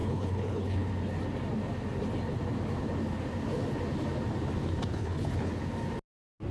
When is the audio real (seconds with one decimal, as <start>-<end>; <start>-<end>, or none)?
0.9-4.9; 5.5-6.5